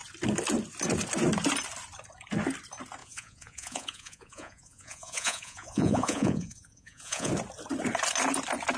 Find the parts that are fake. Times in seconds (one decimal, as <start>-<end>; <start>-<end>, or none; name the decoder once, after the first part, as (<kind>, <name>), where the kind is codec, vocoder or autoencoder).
3.0-7.3 (vocoder, Vocos)